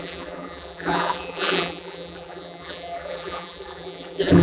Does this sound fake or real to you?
fake